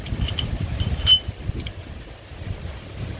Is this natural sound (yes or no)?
yes